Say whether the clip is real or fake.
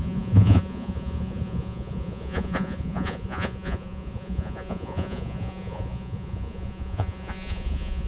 fake